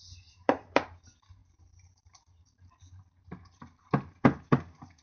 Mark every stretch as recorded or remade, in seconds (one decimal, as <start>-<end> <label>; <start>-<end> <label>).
0.0-5.0 remade